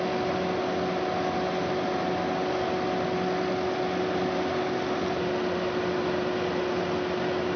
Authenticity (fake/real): real